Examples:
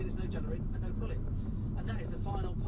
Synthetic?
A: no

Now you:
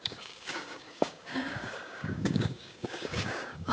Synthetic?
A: yes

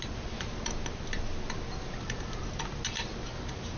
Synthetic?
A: no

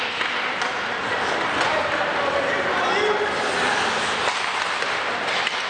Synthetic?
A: no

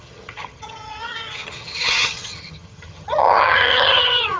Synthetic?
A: yes